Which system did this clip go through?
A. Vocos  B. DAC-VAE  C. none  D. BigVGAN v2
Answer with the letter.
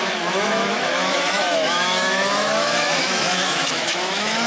B